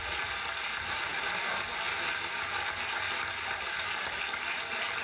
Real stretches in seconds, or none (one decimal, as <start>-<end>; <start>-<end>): 0.0-5.0